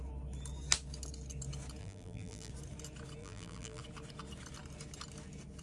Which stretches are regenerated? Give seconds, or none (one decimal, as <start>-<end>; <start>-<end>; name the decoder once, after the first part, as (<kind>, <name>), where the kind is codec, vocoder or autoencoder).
1.8-2.5 (vocoder, BigVGAN v2); 3.2-3.8